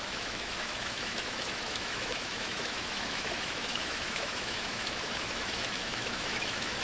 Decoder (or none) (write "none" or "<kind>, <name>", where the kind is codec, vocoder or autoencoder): autoencoder, DAC-VAE